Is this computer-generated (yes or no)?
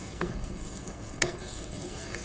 yes